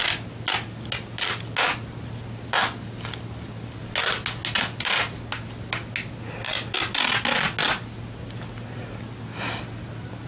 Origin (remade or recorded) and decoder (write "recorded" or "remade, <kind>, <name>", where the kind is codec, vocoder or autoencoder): recorded